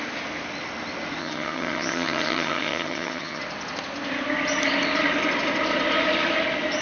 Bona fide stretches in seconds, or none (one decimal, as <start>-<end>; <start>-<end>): 0.0-1.2; 3.4-6.8

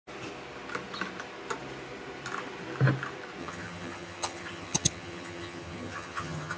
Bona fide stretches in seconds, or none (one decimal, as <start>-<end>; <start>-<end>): 0.0-3.4

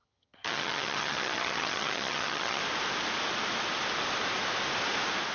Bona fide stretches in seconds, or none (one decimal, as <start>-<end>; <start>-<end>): 2.6-5.3